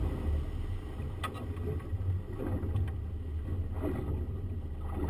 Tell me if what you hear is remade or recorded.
recorded